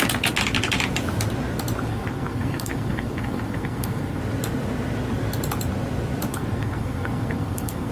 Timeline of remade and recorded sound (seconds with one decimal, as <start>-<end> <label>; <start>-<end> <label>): 0.0-1.9 recorded; 1.9-4.2 remade; 4.2-6.3 recorded; 6.3-7.9 remade

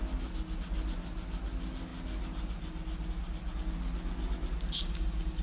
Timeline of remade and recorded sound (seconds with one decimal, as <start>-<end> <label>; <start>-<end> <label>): 0.0-5.4 recorded

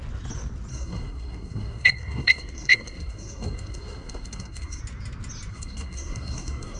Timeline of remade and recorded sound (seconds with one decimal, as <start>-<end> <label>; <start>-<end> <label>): 0.0-0.7 recorded; 0.7-4.8 remade; 4.8-5.5 recorded; 5.5-6.8 remade

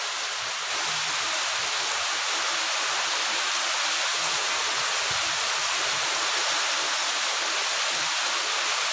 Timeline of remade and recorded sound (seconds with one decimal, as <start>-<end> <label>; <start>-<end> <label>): 0.0-8.9 recorded